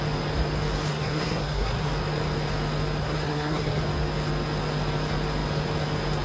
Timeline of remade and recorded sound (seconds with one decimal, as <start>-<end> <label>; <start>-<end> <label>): 0.0-0.9 recorded; 0.9-1.9 remade; 1.9-3.0 recorded; 3.0-3.8 remade; 3.8-6.2 recorded